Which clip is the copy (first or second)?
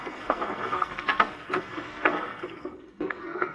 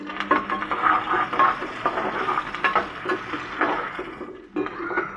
first